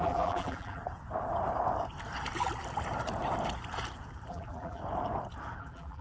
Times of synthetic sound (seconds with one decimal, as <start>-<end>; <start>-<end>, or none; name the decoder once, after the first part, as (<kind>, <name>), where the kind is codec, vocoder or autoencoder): 0.0-0.8 (vocoder, BigVGAN v2); 4.3-4.8; 5.6-6.0